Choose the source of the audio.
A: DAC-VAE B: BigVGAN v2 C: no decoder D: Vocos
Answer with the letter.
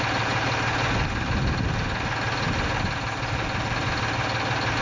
C